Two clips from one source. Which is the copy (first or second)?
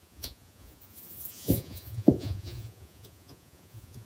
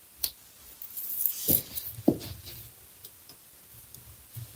first